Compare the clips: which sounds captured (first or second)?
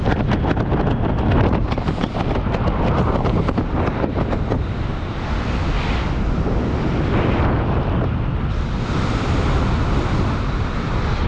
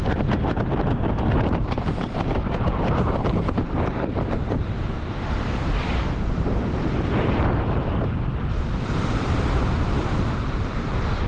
first